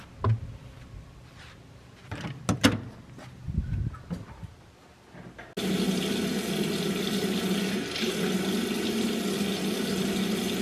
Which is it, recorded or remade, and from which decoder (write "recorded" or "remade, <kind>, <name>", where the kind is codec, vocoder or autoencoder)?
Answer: recorded